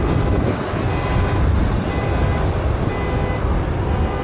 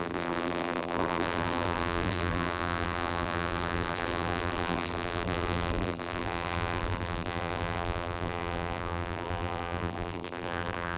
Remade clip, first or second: second